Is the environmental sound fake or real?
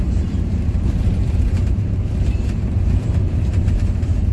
fake